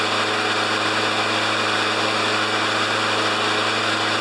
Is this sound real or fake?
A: real